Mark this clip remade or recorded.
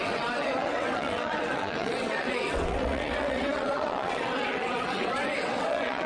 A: remade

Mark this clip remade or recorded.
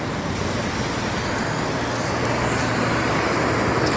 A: recorded